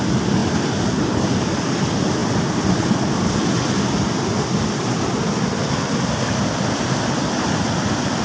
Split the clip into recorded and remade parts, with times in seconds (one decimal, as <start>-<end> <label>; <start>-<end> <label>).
0.0-8.2 recorded